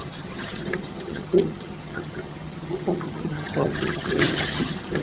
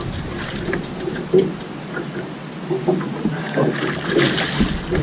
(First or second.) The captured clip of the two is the second